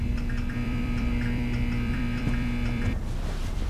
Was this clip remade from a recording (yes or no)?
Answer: yes